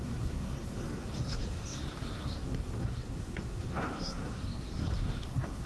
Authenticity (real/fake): fake